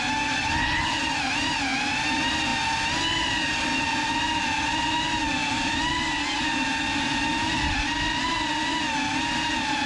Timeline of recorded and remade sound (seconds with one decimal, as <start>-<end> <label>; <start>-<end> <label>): 0.0-5.4 recorded; 5.4-5.9 remade; 5.9-7.4 recorded; 7.4-8.2 remade; 8.2-9.9 recorded